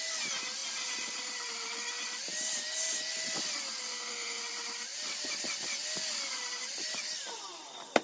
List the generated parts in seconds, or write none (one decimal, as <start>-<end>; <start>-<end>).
3.9-4.4

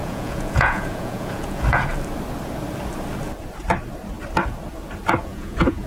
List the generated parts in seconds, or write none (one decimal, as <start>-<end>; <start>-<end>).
0.0-1.9; 5.2-5.9

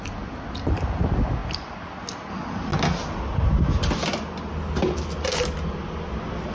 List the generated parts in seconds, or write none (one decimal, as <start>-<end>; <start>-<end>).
none

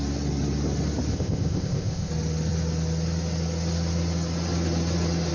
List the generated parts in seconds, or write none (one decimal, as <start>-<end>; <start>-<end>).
1.1-2.1

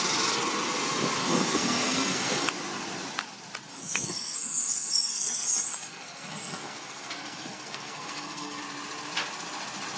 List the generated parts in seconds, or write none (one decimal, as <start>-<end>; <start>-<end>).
1.2-2.5; 3.7-8.6

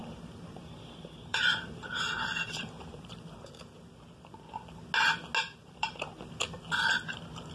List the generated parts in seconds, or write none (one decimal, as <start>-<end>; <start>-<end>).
0.0-3.5; 5.6-6.2